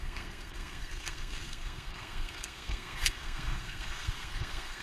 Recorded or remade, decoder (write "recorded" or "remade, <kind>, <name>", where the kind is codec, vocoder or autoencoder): remade, codec, SNAC